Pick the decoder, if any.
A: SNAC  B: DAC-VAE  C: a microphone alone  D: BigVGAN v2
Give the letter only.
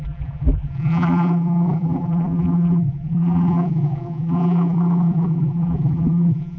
D